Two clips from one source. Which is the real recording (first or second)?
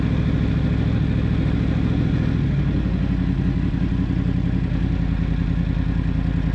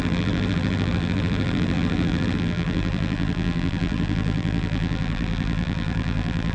first